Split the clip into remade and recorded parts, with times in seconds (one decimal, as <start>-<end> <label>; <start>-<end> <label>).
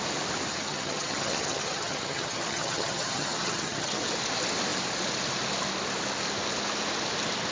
0.0-0.5 recorded; 0.5-4.0 remade; 4.0-7.5 recorded